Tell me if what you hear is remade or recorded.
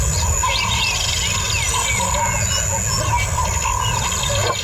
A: recorded